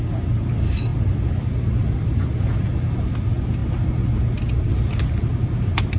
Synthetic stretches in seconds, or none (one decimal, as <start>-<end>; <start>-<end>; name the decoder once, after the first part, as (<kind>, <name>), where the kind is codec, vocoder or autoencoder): none